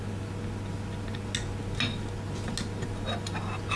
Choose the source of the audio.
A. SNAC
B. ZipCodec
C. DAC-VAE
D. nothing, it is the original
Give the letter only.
D